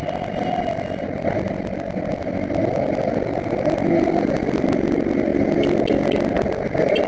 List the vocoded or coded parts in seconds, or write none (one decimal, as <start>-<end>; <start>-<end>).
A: none